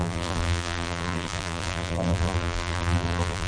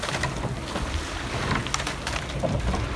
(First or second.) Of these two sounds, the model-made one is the first